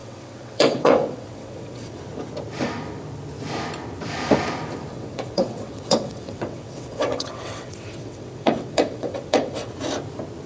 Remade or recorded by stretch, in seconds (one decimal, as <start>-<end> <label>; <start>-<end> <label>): 0.0-2.0 remade; 2.0-4.9 recorded; 4.9-9.7 remade; 9.7-10.5 recorded